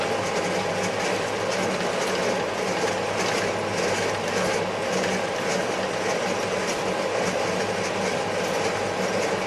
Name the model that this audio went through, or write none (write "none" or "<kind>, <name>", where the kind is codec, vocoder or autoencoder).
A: none